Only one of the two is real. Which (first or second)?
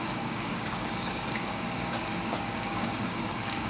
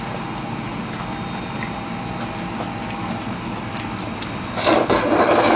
second